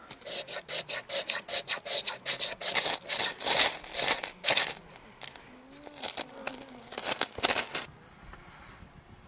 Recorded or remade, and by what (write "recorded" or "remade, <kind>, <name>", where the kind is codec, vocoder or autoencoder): recorded